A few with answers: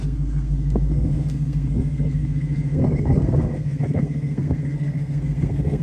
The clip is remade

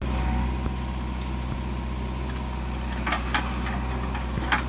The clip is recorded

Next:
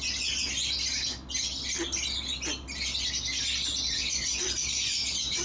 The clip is recorded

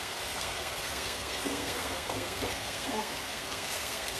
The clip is remade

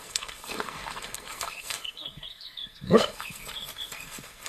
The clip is remade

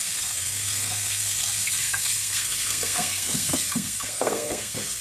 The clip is remade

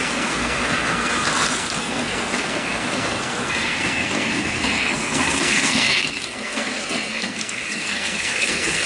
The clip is remade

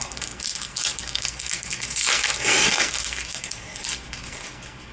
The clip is remade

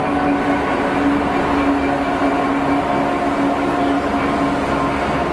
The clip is recorded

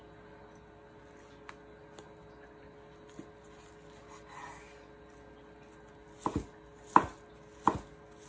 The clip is recorded